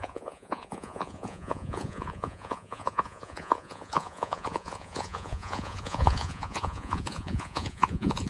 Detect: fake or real fake